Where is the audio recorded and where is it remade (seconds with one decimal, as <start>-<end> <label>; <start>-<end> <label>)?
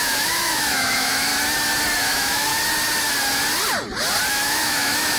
0.0-1.3 remade; 1.3-2.0 recorded; 2.0-2.5 remade; 2.5-4.3 recorded; 4.3-5.2 remade